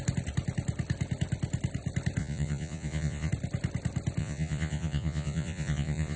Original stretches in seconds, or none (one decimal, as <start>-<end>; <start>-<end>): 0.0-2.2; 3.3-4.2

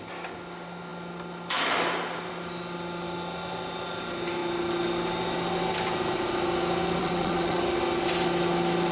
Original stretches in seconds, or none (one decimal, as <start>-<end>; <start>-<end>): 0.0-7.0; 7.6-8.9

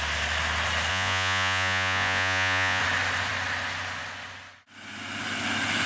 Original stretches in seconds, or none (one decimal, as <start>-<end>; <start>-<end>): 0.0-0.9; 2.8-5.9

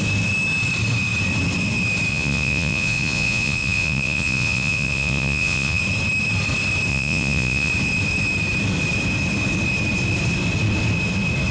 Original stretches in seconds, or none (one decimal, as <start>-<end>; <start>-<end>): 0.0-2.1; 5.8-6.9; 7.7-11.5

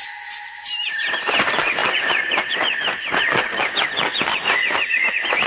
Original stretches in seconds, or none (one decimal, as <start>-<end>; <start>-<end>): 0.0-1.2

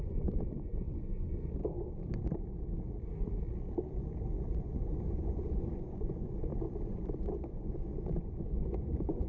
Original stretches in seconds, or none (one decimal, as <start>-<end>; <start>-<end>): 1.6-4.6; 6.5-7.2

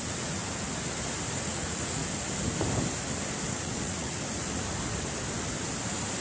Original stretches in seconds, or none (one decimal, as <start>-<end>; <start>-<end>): 0.4-1.3; 2.0-3.5; 4.7-6.2

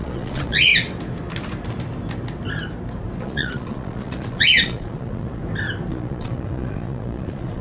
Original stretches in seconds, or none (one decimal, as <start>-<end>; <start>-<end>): 0.7-3.2; 5.4-5.9